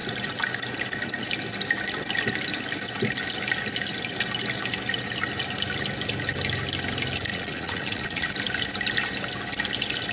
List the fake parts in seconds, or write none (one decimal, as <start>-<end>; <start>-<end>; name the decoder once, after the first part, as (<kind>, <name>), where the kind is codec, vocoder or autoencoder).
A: 7.3-8.3 (vocoder, Vocos)